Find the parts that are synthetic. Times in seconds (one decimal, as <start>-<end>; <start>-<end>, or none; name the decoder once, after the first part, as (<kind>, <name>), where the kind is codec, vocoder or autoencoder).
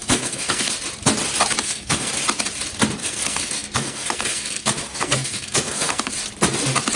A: 0.0-0.7 (codec, SNAC); 1.6-2.1; 3.0-6.1